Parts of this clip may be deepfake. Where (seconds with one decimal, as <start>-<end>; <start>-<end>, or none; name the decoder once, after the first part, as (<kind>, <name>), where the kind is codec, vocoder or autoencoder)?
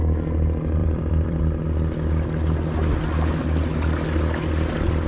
0.8-1.4 (vocoder, BigVGAN v2)